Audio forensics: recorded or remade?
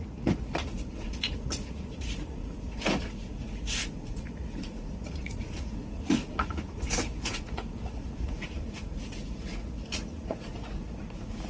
remade